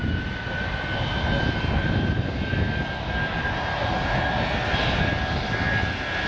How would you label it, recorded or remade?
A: recorded